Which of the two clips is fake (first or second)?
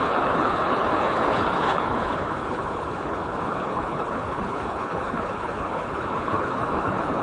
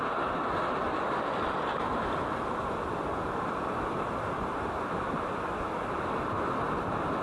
first